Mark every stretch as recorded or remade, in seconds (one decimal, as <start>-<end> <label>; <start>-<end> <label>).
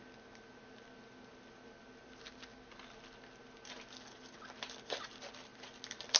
0.0-6.2 recorded